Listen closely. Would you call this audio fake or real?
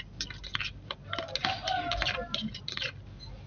real